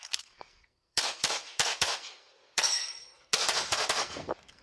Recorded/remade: remade